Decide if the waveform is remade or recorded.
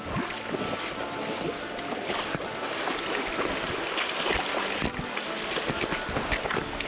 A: recorded